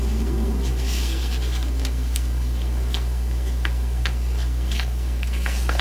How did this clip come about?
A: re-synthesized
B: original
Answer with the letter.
A